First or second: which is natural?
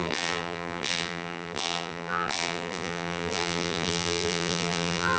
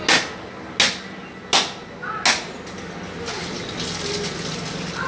second